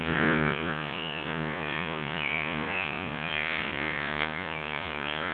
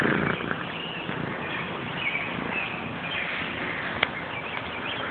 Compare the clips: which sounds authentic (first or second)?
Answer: second